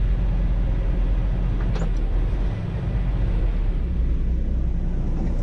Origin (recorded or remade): recorded